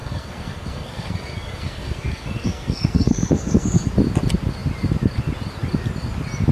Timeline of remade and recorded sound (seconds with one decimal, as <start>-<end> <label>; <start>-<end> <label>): 0.0-3.9 remade; 3.9-6.5 recorded